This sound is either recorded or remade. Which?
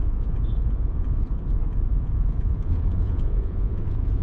remade